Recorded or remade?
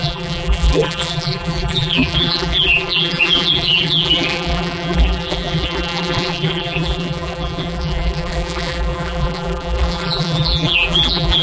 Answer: remade